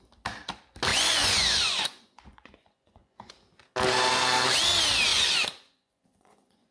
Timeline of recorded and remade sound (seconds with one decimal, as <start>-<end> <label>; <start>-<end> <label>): 0.0-0.9 recorded; 0.9-3.3 remade; 3.3-5.1 recorded; 5.1-6.7 remade